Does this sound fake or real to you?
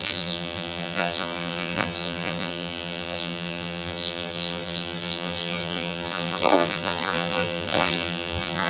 fake